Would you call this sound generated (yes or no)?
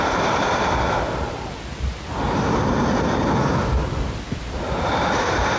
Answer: no